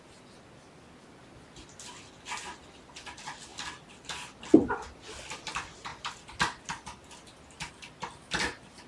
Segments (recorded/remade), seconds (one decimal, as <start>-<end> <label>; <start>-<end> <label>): 0.0-8.9 recorded